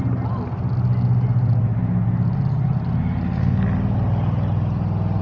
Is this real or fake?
real